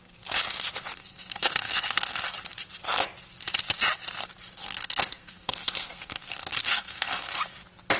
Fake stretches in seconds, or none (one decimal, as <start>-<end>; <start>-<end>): 0.9-2.2; 4.6-7.4